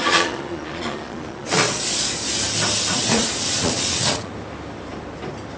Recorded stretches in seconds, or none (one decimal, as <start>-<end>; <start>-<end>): 2.1-2.9; 4.3-5.6